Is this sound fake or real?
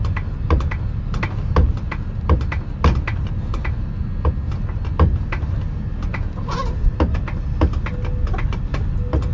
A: real